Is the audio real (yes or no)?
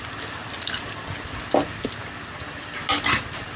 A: yes